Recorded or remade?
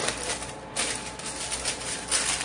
recorded